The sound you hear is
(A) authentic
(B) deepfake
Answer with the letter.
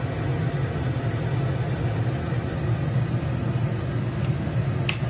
A